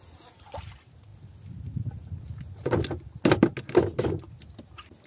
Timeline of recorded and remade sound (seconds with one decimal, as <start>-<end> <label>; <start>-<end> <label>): 0.0-5.1 recorded